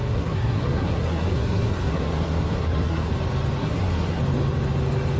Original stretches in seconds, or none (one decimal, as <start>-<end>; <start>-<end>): 3.1-3.6; 4.2-5.2

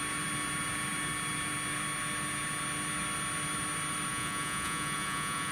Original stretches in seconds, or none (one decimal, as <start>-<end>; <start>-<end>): 0.0-4.1

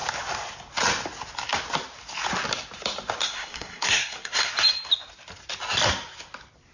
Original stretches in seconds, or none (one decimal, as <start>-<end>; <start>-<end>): 0.0-3.2; 4.5-6.7

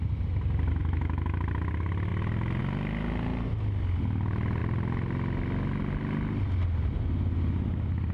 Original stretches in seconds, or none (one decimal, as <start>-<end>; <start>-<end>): 0.0-0.8; 1.4-8.1

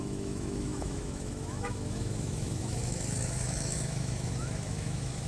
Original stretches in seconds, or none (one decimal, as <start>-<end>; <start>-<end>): none